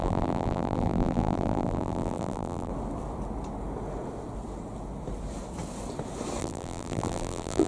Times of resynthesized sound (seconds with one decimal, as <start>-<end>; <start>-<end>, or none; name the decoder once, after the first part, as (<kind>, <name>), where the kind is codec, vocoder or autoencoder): 0.0-2.7 (vocoder, BigVGAN v2); 6.4-7.7